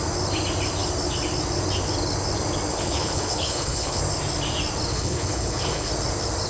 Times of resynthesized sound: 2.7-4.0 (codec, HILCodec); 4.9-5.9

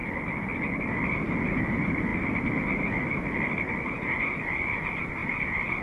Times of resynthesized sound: 5.2-5.8 (vocoder, BigVGAN v2)

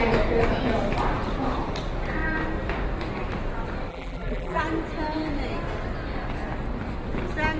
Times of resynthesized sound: 3.9-4.6 (vocoder, BigVGAN v2)